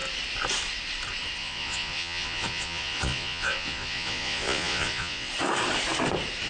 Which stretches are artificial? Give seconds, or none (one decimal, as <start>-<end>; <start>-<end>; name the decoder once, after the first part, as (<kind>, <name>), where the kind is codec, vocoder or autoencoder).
1.4-5.3 (vocoder, Vocos)